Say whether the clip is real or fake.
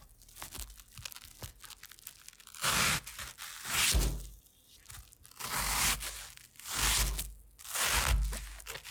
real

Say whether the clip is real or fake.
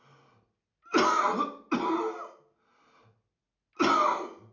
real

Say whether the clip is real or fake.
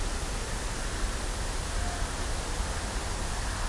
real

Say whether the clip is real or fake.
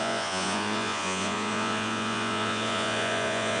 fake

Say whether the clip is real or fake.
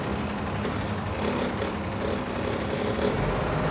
real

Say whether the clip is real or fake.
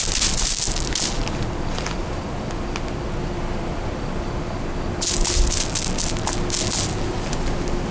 real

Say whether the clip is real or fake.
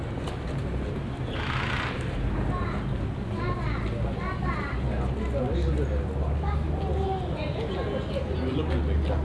real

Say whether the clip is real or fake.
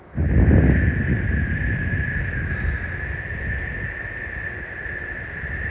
real